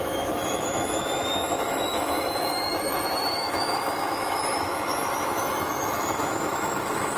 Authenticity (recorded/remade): remade